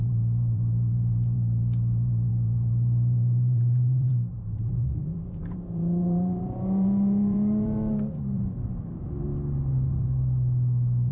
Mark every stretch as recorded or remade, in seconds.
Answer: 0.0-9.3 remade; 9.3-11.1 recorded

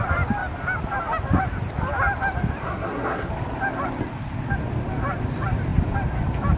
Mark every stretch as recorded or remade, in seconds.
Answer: 0.0-2.6 recorded; 2.6-3.3 remade; 3.3-6.6 recorded

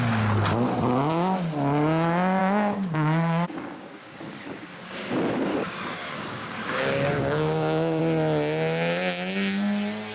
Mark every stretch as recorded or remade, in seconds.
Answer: 0.0-2.4 recorded; 2.4-5.1 remade; 5.1-5.5 recorded; 5.5-8.0 remade; 8.0-10.1 recorded

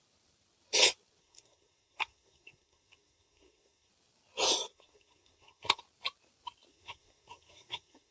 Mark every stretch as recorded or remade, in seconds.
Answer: 0.0-1.2 recorded; 1.2-3.9 remade; 3.9-4.7 recorded; 4.7-5.8 remade; 5.8-6.7 recorded; 6.7-8.1 remade